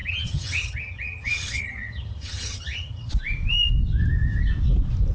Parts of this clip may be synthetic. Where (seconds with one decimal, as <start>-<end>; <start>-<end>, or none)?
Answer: 0.0-3.1

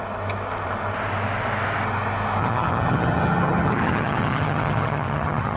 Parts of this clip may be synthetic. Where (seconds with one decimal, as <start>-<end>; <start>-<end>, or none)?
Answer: 2.4-5.6

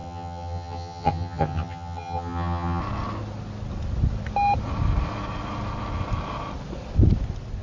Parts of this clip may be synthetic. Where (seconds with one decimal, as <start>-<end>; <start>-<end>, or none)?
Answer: 0.0-2.8

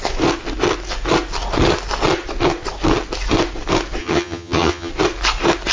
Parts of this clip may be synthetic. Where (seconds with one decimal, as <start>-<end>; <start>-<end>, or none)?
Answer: 4.0-4.9

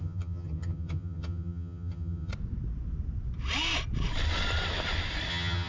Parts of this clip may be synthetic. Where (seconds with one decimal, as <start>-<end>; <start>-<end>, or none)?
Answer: 0.0-2.3; 5.3-5.7

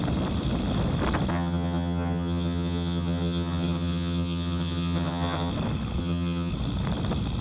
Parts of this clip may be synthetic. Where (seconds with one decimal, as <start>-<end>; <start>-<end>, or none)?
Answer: 1.3-5.5; 6.0-6.5